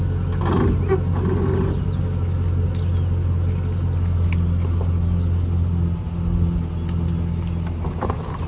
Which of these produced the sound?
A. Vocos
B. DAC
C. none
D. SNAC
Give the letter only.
C